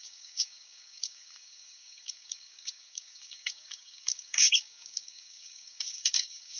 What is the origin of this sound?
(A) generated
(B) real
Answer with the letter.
A